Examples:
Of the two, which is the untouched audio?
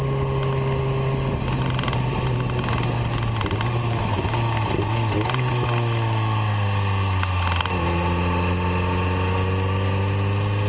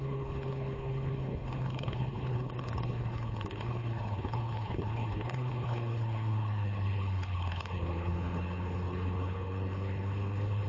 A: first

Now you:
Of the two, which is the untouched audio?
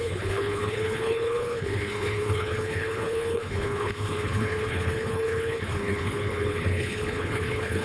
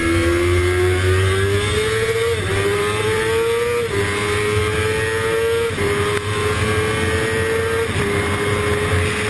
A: second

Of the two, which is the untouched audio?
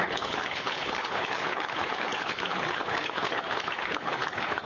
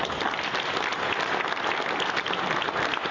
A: second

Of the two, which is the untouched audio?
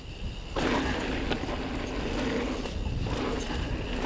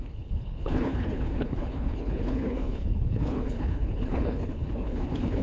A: first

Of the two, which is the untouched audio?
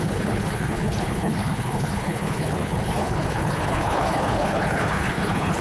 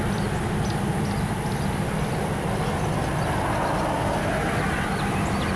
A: second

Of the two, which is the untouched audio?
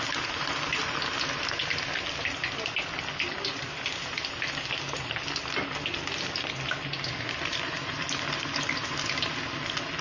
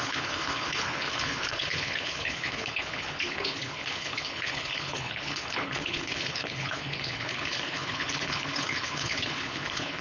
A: first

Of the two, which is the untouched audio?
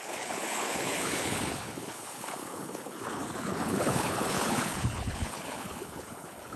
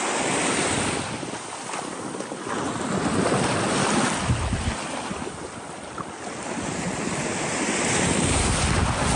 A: second